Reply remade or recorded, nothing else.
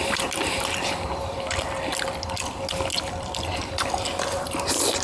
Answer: recorded